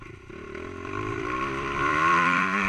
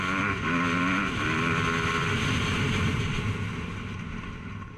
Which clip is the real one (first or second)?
second